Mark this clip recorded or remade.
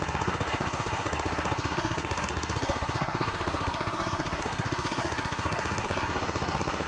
remade